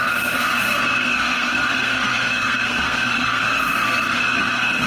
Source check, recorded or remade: remade